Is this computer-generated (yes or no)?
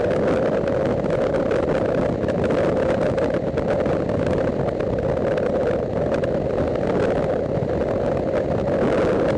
no